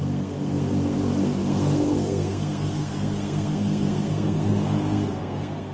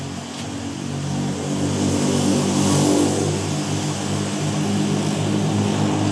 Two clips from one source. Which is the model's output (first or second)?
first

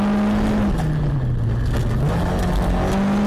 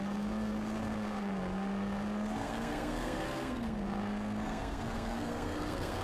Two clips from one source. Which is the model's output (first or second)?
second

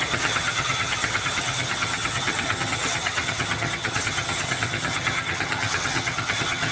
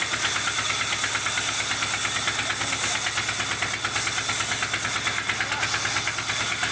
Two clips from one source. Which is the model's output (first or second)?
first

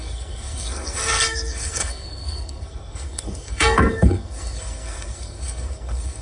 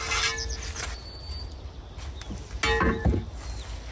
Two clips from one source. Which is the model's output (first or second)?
first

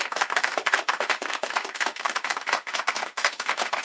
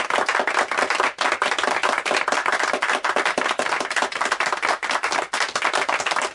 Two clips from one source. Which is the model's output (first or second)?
first